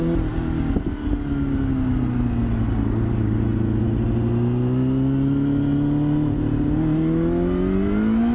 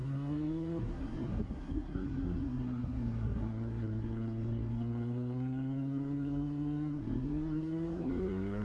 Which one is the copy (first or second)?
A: second